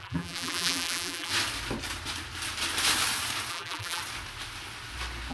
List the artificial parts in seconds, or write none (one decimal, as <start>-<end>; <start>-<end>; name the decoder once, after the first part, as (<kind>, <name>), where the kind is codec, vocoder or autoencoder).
0.0-1.3 (vocoder, BigVGAN v2); 3.5-4.0